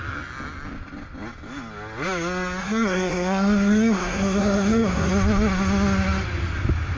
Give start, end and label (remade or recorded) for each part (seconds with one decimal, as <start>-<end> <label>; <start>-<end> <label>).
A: 0.0-2.6 recorded; 2.6-5.1 remade; 5.1-7.0 recorded